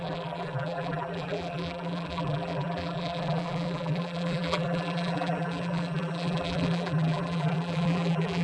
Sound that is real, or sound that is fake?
fake